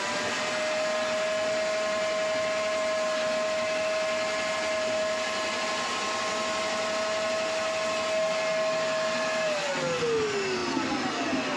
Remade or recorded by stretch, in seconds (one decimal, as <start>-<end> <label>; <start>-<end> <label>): 0.0-11.6 recorded